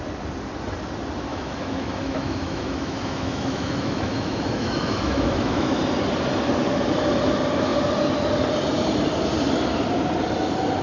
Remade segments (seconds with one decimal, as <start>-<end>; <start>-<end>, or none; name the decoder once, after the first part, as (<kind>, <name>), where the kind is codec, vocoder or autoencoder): 1.3-5.8 (autoencoder, DAC-VAE)